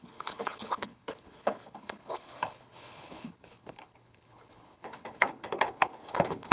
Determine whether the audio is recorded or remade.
remade